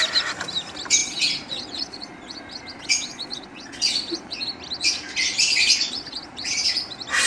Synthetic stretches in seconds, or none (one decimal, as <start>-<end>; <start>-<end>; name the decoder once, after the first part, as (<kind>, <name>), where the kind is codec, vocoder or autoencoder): 1.0-4.4 (vocoder, Vocos); 5.6-6.5